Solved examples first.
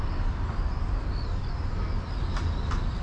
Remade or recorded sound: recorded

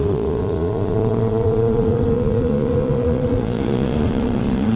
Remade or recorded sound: remade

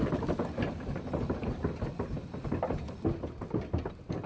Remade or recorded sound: recorded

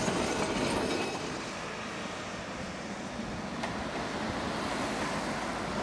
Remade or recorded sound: recorded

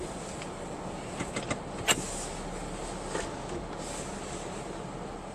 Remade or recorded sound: recorded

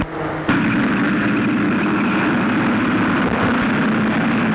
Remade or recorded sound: recorded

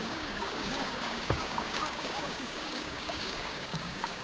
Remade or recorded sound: remade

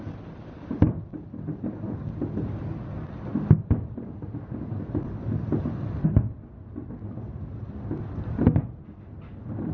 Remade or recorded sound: recorded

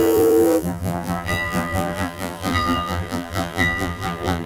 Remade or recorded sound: remade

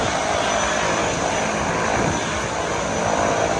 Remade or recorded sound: recorded